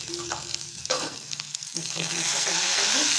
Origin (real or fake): fake